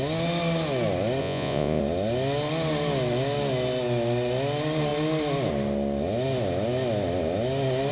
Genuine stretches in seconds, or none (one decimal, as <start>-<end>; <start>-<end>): 0.0-1.2; 1.8-7.9